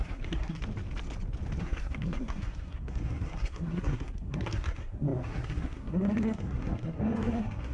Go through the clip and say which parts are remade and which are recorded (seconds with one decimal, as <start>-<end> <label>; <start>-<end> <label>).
0.0-0.6 remade; 0.6-1.6 recorded; 1.6-7.7 remade